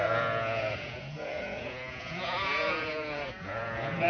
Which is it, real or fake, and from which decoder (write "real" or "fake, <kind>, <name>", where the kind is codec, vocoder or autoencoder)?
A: fake, vocoder, Vocos